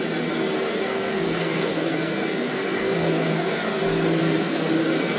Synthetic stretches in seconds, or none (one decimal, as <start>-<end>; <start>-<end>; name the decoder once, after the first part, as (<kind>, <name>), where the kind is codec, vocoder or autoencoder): 0.7-3.8 (codec, SNAC); 4.2-4.7